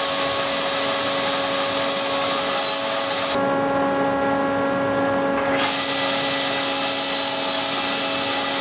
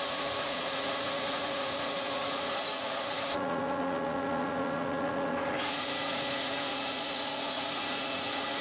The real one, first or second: first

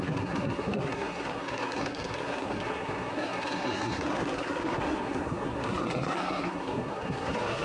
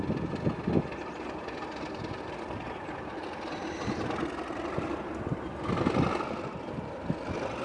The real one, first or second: second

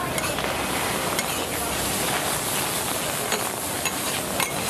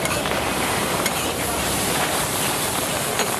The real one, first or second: first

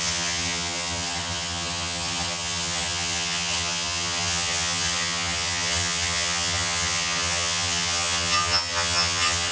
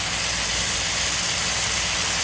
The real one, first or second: second